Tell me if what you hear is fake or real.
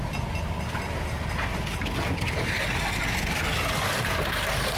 real